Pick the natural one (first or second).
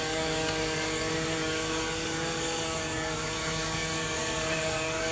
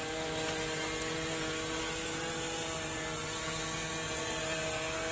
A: second